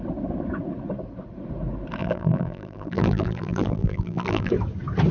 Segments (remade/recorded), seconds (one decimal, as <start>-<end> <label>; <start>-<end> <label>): 0.0-2.0 recorded; 2.0-4.5 remade; 4.5-5.1 recorded